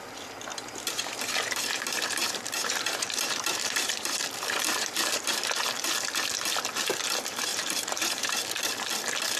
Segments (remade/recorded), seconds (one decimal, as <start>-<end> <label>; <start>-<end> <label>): 0.0-0.5 recorded; 0.5-5.5 remade; 5.5-7.5 recorded; 7.5-8.3 remade; 8.3-9.4 recorded